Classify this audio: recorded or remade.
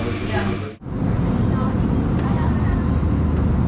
recorded